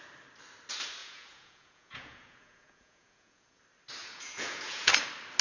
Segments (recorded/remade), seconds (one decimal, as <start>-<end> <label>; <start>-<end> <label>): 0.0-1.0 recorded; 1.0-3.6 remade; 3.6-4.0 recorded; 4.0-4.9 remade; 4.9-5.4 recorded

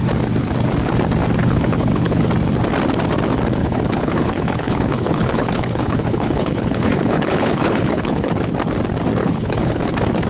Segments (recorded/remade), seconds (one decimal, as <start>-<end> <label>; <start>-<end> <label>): 0.0-1.4 recorded; 1.4-2.3 remade; 2.3-3.6 recorded; 3.6-8.3 remade; 8.3-9.2 recorded; 9.2-9.9 remade; 9.9-10.3 recorded

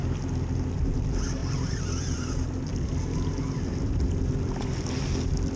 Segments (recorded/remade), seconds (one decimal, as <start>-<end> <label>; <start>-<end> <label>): 0.0-1.4 recorded; 1.4-2.6 remade; 2.6-5.6 recorded

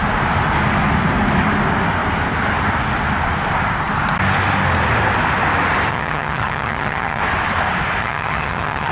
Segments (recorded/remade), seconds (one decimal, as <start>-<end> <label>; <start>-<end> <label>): 0.0-5.9 recorded; 5.9-7.2 remade; 7.2-8.0 recorded; 8.0-8.9 remade

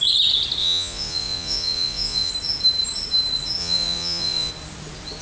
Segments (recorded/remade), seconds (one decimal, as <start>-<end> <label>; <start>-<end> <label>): 0.0-0.6 recorded; 0.6-2.3 remade; 2.3-3.6 recorded; 3.6-4.5 remade; 4.5-5.2 recorded

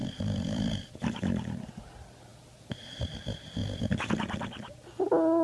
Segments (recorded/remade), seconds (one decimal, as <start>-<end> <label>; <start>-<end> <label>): 0.0-1.7 remade; 1.7-5.4 recorded

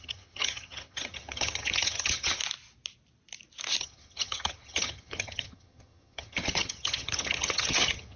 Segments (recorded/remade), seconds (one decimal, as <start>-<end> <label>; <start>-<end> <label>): 0.0-2.4 remade; 2.4-3.8 recorded; 3.8-8.2 remade

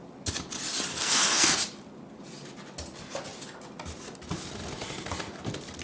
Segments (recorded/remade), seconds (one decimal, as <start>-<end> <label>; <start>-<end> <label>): 0.0-0.9 recorded; 0.9-1.6 remade; 1.6-5.8 recorded